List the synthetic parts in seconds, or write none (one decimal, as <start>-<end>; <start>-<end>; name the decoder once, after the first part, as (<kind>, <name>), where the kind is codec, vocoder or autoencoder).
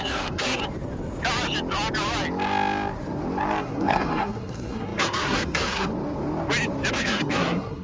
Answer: 0.0-0.6 (codec, SNAC); 3.6-5.9; 6.9-7.8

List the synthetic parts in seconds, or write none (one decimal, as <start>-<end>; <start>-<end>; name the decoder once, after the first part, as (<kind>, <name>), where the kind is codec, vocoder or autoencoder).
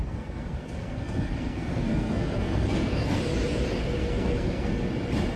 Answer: 0.0-3.2 (codec, SNAC); 4.0-4.9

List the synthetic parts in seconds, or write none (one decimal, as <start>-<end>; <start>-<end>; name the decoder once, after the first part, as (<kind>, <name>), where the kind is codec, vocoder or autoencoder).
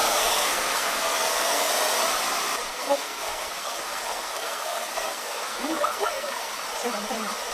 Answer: 0.0-1.7 (codec, SNAC); 2.7-6.5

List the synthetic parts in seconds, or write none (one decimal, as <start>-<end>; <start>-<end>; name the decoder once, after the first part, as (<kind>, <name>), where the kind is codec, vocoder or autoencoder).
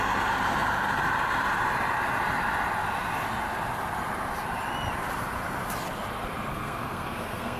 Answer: 6.5-7.6 (codec, SNAC)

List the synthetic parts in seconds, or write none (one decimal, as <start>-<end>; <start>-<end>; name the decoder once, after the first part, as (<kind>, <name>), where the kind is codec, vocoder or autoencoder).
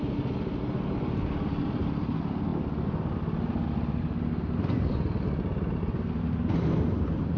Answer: none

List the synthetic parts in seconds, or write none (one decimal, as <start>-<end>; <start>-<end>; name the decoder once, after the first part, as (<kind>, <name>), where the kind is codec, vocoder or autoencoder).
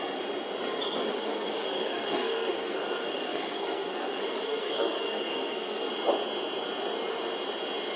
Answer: 1.1-5.9 (codec, SNAC)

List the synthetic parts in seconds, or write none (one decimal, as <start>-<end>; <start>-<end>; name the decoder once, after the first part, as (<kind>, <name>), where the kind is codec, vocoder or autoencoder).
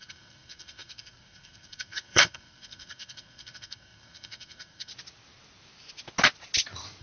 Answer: 0.0-4.9 (codec, SNAC)